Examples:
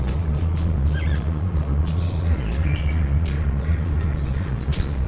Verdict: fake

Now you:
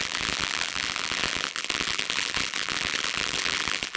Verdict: fake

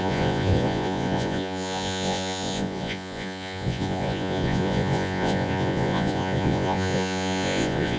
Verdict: fake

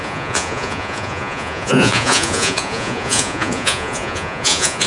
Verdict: fake